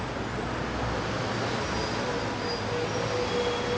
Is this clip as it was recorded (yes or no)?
yes